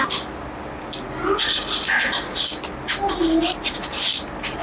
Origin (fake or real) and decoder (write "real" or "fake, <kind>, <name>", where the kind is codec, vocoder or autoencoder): real